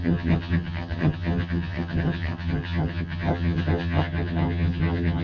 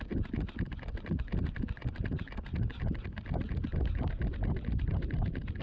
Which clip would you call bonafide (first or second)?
second